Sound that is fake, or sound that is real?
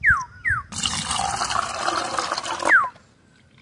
real